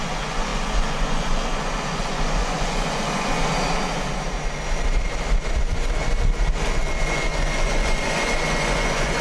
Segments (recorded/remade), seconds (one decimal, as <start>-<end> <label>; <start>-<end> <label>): 0.0-3.5 remade; 3.5-7.0 recorded; 7.0-9.2 remade